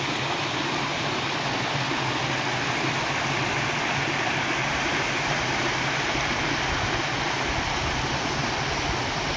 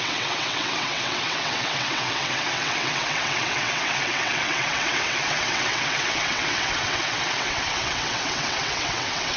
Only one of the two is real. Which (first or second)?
first